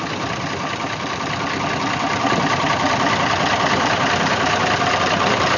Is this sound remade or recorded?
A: recorded